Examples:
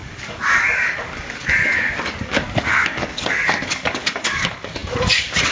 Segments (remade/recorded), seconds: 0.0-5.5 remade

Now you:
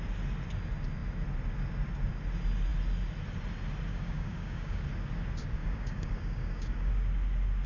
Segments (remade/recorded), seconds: 0.0-3.9 recorded; 3.9-4.8 remade; 4.8-5.6 recorded; 5.6-6.9 remade; 6.9-7.7 recorded